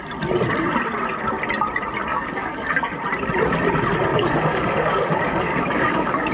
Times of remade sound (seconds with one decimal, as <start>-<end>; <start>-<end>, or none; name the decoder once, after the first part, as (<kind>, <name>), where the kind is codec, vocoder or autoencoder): 2.1-2.9 (codec, DAC); 4.1-6.3

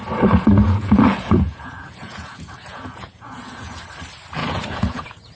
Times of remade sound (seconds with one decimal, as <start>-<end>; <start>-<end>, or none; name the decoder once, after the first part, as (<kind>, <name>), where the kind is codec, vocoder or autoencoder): 0.6-3.8 (vocoder, Vocos); 4.4-5.3

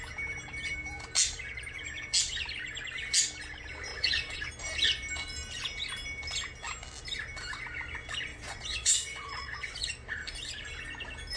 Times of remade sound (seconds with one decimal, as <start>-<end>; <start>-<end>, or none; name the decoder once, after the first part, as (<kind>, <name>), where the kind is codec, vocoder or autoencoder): 3.9-4.5 (vocoder, Vocos); 8.3-9.9

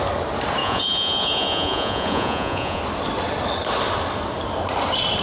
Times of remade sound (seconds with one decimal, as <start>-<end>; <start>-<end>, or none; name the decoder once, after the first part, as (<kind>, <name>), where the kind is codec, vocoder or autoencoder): 0.6-2.8 (vocoder, Vocos)

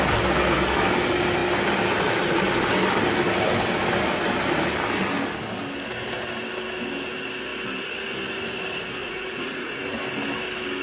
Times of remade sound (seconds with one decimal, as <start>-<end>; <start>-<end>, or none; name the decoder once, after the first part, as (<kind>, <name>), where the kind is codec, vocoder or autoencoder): 9.0-9.8 (vocoder, Vocos)